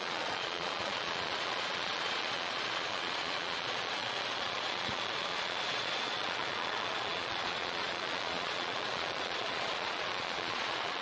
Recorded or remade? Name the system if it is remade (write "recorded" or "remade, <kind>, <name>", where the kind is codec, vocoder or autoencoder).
remade, vocoder, Vocos